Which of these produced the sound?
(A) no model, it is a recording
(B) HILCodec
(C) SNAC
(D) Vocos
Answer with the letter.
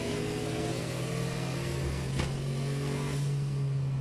C